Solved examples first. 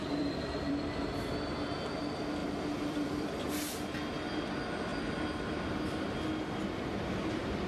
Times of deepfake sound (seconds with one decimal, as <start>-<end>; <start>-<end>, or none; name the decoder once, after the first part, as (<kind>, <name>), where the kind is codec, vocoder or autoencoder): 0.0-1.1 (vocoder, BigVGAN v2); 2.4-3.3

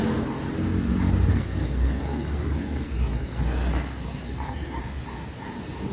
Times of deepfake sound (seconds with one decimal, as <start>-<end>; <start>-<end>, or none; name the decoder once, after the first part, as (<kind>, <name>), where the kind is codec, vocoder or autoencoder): 1.3-4.8 (codec, SNAC)

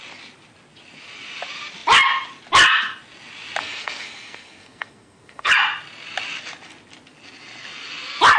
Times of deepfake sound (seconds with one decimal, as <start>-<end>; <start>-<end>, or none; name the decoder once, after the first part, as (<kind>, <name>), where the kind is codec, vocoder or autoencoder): 3.6-5.5 (codec, SNAC)

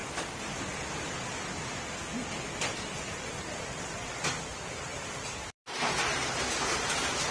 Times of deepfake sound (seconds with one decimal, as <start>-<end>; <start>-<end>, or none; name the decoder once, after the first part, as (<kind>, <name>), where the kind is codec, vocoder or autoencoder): 4.9-7.3 (vocoder, BigVGAN v2)

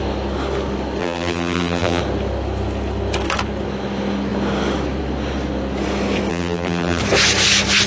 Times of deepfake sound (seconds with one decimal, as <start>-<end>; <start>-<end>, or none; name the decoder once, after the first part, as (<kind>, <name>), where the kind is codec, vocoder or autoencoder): 1.0-2.0 (vocoder, BigVGAN v2); 6.3-7.0

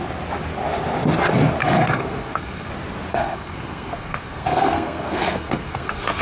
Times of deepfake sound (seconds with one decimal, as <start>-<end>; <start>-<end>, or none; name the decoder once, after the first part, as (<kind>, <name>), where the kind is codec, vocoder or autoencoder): 1.6-2.7 (codec, SNAC); 3.1-6.2